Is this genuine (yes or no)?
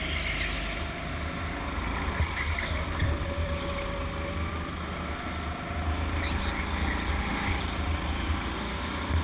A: yes